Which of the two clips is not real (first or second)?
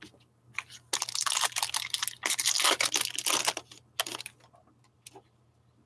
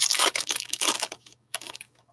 second